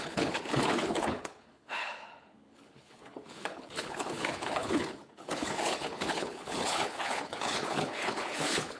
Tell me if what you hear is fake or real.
fake